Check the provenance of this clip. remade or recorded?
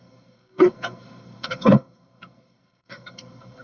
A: remade